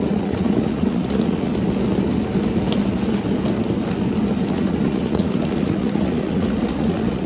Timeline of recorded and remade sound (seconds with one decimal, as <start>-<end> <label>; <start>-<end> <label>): 0.0-1.5 remade; 1.5-4.5 recorded; 4.5-7.3 remade